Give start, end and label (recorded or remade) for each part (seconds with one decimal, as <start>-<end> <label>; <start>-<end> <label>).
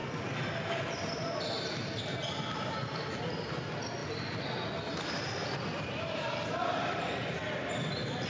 0.0-8.3 recorded